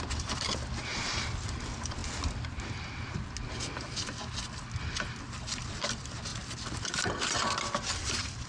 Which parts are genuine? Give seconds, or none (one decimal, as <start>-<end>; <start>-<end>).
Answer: 0.9-1.5; 2.0-5.2; 6.3-7.8

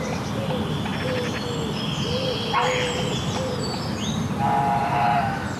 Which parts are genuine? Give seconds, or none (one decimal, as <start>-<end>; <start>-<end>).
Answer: 0.0-5.6